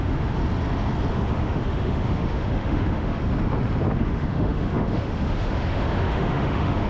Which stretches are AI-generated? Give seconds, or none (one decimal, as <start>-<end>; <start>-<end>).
0.0-0.4; 1.1-3.2; 4.0-6.9